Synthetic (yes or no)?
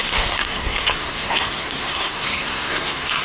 yes